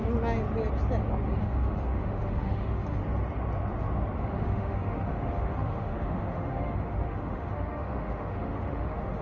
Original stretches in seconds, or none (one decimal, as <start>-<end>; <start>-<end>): 0.0-1.4; 3.0-4.2